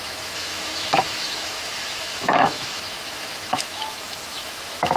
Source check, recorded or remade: remade